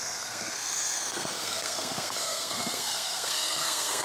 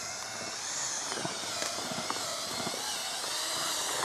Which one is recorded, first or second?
second